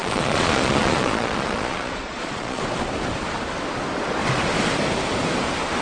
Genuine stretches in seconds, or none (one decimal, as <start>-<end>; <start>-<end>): 2.6-5.8